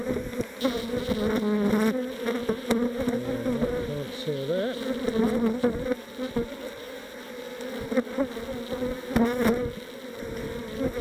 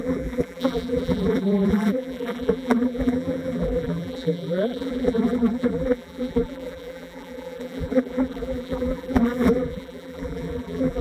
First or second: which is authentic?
first